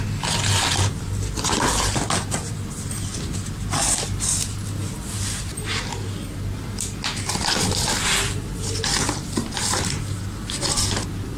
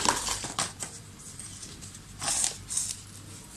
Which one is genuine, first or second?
first